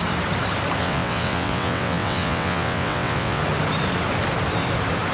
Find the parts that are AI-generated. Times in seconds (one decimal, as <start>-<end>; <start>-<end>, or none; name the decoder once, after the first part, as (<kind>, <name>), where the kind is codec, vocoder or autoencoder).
0.8-3.4 (vocoder, WaveNeXt)